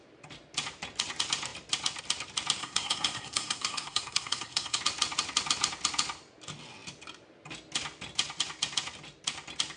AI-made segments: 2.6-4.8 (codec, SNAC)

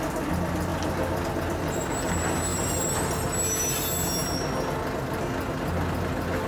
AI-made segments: none